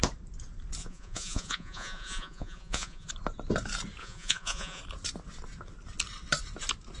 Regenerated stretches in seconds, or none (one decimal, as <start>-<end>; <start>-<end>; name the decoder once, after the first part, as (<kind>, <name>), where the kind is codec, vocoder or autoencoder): 0.8-3.1 (vocoder, Vocos); 4.0-4.8